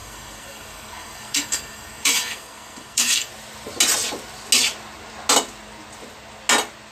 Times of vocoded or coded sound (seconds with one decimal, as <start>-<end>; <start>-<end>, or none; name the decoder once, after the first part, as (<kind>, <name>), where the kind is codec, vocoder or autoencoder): 0.0-3.3 (codec, SNAC)